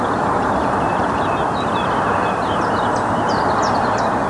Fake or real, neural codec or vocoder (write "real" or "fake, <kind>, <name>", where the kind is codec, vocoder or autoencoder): real